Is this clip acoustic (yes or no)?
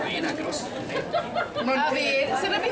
yes